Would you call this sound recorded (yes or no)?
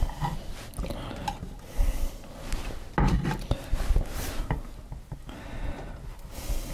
yes